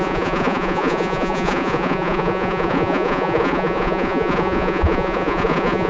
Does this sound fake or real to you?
fake